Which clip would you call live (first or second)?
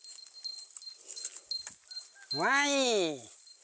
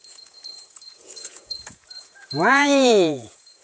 first